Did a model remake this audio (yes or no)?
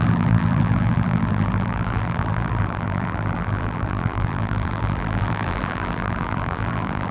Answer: yes